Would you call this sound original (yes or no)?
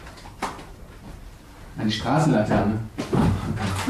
yes